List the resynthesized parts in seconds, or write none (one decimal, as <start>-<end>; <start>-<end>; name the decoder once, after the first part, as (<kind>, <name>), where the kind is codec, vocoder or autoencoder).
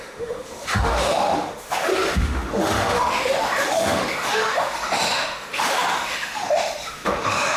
0.0-7.6 (autoencoder, DAC-VAE)